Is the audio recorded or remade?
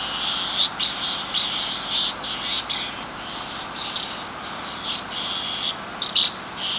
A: recorded